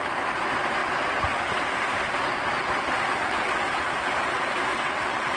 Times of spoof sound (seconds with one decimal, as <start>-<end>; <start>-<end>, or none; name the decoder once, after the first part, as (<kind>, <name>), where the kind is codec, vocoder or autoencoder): 3.2-3.8 (vocoder, WaveNeXt); 4.7-5.4